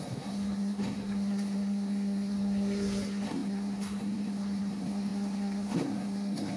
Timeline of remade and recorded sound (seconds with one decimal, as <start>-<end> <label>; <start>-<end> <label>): 0.0-6.6 remade